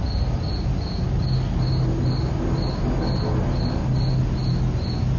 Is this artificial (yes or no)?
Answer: no